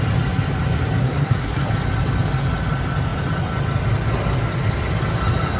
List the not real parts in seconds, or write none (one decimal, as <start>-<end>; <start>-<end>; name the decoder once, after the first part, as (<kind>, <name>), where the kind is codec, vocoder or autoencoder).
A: 1.0-1.7 (codec, SNAC)